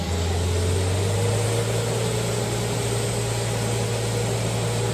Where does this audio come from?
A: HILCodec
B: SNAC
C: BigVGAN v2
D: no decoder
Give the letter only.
D